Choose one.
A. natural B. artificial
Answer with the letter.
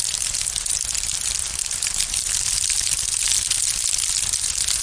A